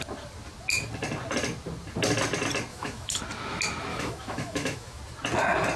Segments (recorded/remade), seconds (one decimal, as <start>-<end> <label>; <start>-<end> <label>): 0.0-2.7 recorded; 2.7-3.2 remade; 3.2-3.9 recorded; 3.9-5.0 remade; 5.0-5.8 recorded